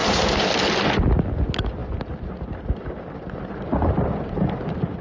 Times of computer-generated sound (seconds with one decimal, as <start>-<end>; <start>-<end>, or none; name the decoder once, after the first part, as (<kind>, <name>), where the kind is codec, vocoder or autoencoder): 1.8-5.0 (vocoder, BigVGAN v2)